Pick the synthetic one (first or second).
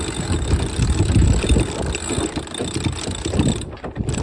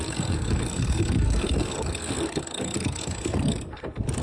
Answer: second